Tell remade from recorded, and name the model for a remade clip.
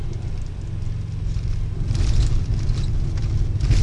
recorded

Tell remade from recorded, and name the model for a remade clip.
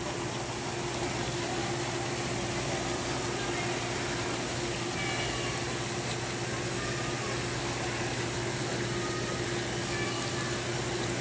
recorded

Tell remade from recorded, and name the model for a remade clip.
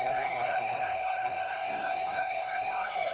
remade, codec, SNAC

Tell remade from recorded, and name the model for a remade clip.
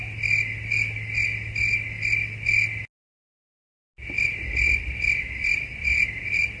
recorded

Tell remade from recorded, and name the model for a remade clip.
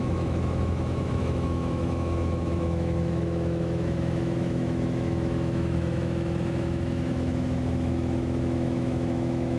remade, autoencoder, DAC-VAE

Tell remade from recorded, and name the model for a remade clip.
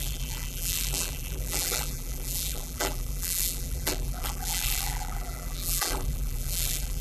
remade, vocoder, BigVGAN v2